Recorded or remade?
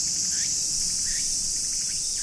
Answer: recorded